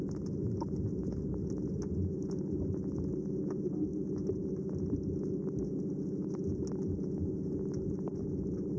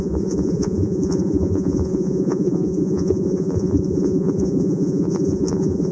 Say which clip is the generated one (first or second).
second